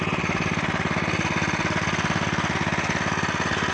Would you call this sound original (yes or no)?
yes